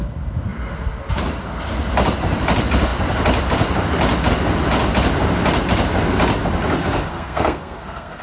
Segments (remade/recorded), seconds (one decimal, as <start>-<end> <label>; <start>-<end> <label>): 0.0-7.1 recorded; 7.1-8.2 remade